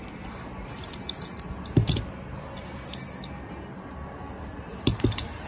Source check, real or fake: real